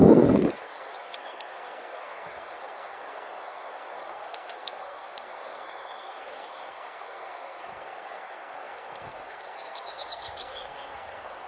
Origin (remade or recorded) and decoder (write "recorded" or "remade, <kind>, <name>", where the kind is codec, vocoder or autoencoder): remade, codec, SNAC